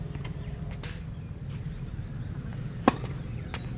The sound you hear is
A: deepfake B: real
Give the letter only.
B